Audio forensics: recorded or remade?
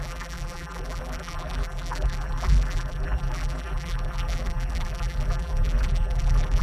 remade